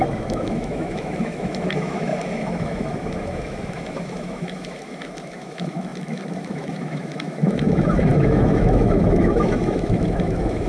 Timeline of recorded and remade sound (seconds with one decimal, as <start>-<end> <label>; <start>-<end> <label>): 0.0-10.7 remade